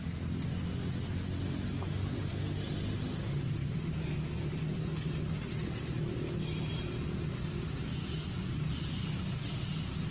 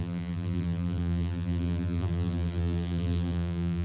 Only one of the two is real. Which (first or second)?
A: first